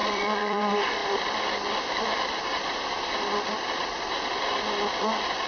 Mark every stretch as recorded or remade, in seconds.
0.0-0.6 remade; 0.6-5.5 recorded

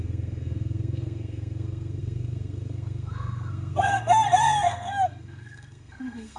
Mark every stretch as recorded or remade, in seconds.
0.0-6.4 remade

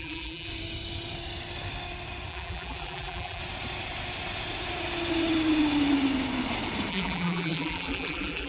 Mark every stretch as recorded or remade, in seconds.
0.0-0.5 remade; 0.5-2.3 recorded; 2.3-3.4 remade; 3.4-6.9 recorded; 6.9-8.5 remade

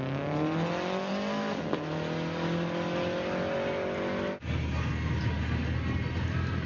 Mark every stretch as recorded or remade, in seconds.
0.0-6.7 recorded

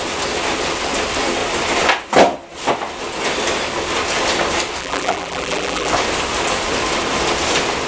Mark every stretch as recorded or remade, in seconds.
0.0-4.8 recorded; 4.8-5.9 remade; 5.9-7.9 recorded